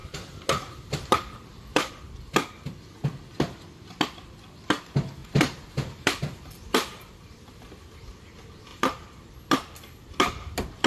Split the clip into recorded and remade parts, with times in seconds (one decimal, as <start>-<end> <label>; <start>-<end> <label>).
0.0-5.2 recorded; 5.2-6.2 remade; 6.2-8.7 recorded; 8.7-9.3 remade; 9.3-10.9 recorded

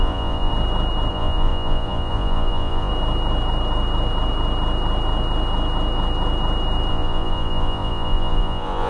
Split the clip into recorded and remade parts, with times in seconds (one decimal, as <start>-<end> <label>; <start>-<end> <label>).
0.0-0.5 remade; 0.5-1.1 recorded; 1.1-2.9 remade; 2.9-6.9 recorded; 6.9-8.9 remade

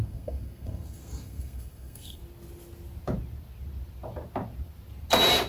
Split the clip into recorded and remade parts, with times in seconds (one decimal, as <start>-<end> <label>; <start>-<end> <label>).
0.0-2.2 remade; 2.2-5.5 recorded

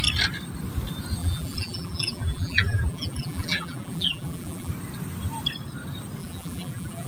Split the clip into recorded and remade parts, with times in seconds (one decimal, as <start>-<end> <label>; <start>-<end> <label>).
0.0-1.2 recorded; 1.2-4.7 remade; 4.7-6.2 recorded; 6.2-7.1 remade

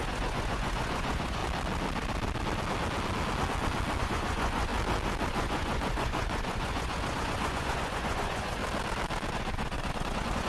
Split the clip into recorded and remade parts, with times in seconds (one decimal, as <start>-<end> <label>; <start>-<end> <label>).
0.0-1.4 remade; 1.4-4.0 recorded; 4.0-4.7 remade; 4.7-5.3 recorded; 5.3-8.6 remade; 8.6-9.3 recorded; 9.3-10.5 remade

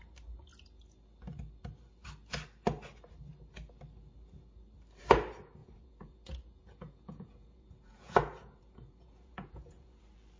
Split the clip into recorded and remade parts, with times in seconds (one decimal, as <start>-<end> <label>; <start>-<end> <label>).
0.0-5.6 recorded; 5.6-10.0 remade; 10.0-10.4 recorded

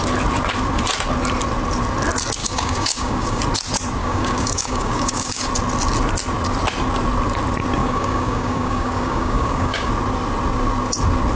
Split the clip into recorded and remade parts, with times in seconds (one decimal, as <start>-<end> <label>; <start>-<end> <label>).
0.0-2.4 recorded; 2.4-3.4 remade; 3.4-4.0 recorded; 4.0-5.5 remade; 5.5-7.8 recorded; 7.8-9.9 remade; 9.9-11.4 recorded

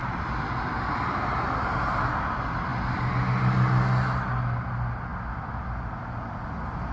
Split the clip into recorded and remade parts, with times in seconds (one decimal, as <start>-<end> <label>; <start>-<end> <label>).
0.0-6.9 recorded